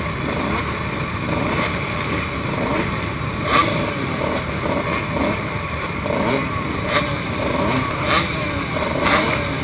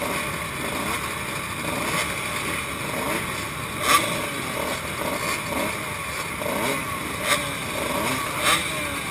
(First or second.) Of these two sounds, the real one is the second